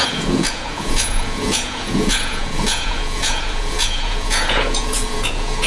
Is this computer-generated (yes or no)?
yes